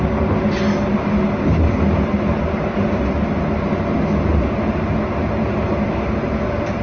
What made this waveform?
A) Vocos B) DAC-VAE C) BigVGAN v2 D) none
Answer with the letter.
D